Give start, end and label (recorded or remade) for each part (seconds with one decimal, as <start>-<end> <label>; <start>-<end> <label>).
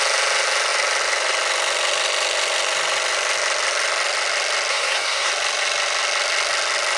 0.0-4.7 recorded; 4.7-5.3 remade; 5.3-7.0 recorded